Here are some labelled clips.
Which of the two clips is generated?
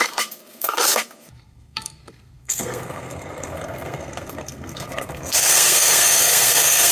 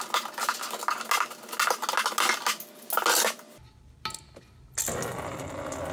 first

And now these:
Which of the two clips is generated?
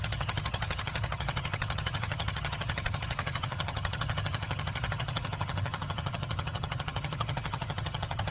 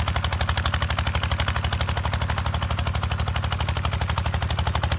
first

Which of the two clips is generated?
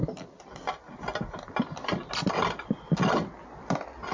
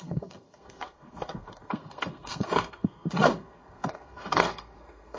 second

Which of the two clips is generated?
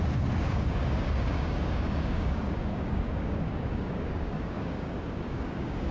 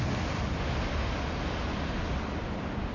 first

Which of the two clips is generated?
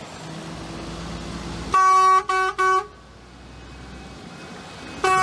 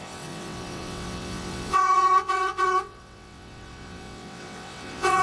second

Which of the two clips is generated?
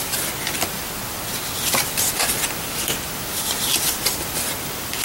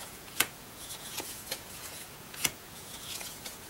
second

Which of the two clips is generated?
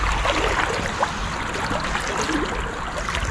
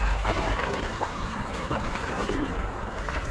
second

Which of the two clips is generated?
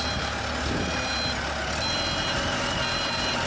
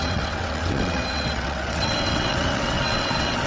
second